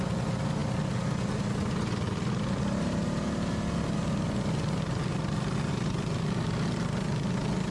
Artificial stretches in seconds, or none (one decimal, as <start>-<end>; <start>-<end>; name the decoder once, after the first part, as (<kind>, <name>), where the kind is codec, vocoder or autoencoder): none